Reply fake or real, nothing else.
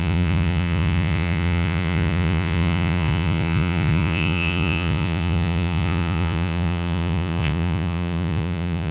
fake